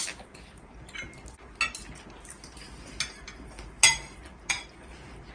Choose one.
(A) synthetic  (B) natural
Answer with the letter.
B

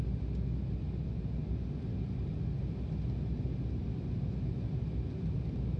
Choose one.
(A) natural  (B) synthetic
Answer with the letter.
A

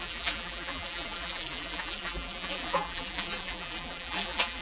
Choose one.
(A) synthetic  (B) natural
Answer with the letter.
A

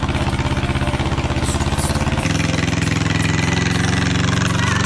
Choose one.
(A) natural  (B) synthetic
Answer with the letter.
A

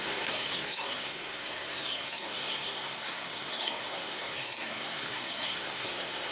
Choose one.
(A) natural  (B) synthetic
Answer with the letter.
B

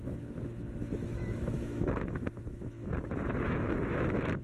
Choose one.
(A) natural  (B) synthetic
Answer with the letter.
B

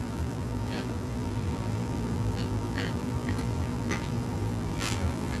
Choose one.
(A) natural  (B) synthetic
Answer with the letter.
B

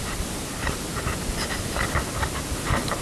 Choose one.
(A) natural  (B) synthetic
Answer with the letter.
A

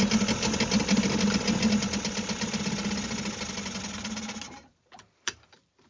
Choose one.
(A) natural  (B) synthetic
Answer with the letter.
A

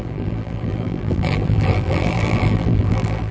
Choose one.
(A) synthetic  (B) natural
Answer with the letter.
A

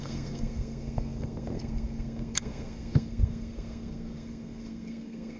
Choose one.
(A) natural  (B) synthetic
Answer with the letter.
B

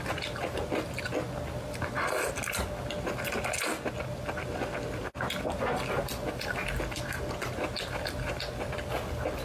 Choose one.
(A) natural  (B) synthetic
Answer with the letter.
A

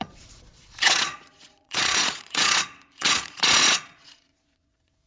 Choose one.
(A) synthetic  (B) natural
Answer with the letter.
A